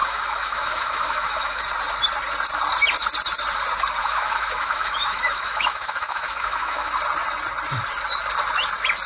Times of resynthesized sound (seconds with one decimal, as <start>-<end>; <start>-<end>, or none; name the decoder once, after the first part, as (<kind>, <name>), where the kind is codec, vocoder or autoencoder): 0.0-1.6 (autoencoder, DAC-VAE); 4.0-6.9